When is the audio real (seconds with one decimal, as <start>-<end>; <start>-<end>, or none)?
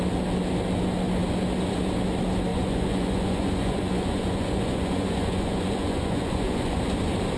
0.0-2.5; 6.8-7.4